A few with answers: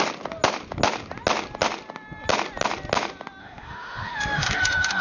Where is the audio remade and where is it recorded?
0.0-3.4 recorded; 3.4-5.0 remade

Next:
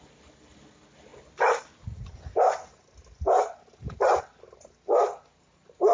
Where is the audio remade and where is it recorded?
0.0-5.9 recorded

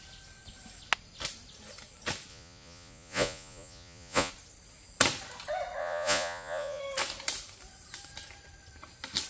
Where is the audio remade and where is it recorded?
0.0-2.3 recorded; 2.3-4.3 remade; 4.3-5.8 recorded; 5.8-6.8 remade; 6.8-9.3 recorded

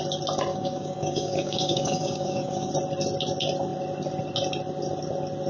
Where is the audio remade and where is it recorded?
0.0-0.5 recorded; 0.5-2.7 remade; 2.7-5.5 recorded